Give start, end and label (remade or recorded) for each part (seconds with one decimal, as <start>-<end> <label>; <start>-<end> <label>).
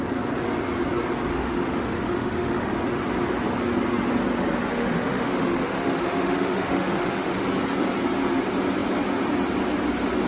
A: 0.0-1.3 recorded; 1.3-2.7 remade; 2.7-4.7 recorded; 4.7-7.5 remade; 7.5-10.3 recorded